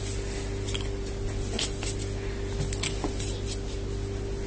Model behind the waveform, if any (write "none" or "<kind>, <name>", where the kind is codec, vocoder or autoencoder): none